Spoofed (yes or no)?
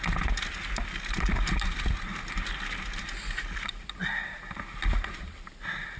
no